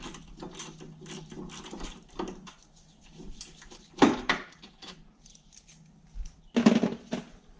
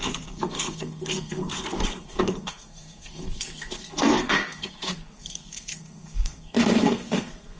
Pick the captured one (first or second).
first